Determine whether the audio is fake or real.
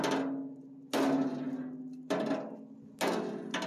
real